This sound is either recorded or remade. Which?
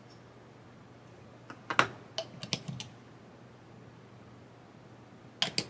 recorded